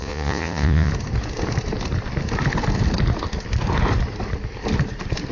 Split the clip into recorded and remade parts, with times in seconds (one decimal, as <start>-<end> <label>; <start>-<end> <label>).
0.0-0.9 remade; 0.9-5.3 recorded